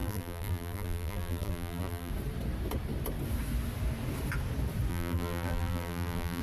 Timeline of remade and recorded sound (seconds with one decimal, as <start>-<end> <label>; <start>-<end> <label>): 0.0-2.1 remade; 2.1-4.9 recorded; 4.9-6.4 remade